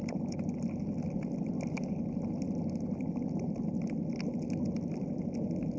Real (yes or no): yes